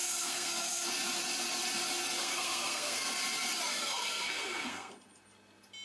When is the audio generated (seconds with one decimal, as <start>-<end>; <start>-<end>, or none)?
0.0-0.9; 2.2-3.2; 3.7-4.9